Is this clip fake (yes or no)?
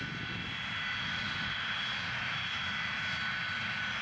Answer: no